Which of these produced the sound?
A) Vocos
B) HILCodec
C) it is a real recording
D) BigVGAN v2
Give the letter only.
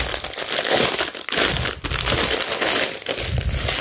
C